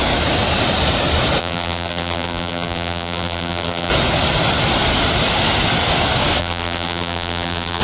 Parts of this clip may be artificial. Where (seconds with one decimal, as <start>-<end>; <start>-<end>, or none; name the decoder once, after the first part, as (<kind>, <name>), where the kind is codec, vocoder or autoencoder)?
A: 1.4-3.9 (vocoder, BigVGAN v2); 6.4-7.8